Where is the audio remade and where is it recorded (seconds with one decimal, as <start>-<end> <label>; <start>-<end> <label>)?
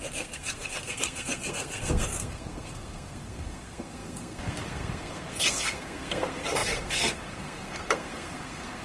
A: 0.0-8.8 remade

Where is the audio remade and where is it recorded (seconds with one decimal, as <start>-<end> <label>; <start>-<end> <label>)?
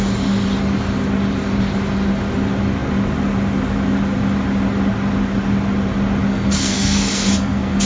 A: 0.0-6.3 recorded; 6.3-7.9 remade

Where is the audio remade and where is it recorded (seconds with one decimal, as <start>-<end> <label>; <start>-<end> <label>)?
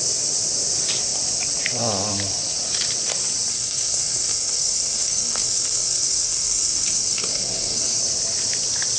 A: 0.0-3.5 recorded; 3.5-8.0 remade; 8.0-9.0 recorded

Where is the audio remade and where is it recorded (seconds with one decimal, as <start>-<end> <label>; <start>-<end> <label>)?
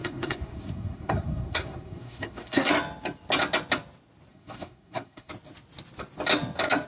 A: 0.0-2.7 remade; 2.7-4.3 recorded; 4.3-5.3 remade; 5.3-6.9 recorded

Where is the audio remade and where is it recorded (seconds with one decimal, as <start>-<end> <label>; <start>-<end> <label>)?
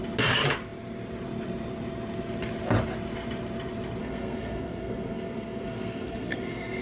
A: 0.0-4.0 recorded; 4.0-6.8 remade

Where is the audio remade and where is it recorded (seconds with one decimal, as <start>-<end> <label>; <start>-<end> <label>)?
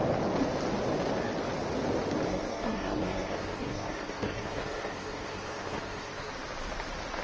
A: 0.0-2.3 recorded; 2.3-6.3 remade; 6.3-7.2 recorded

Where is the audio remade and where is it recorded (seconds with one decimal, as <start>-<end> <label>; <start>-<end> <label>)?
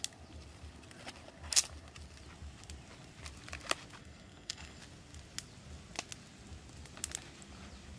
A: 0.0-4.0 recorded; 4.0-4.8 remade; 4.8-8.0 recorded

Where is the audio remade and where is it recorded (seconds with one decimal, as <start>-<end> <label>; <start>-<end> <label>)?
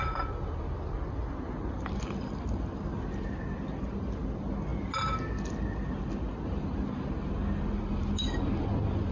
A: 0.0-9.1 recorded